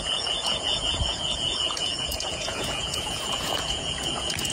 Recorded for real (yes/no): no